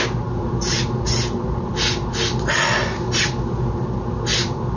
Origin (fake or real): real